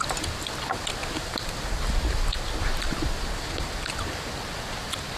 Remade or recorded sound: recorded